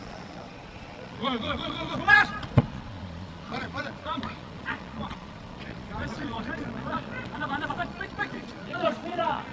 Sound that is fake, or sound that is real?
fake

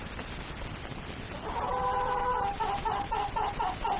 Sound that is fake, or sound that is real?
real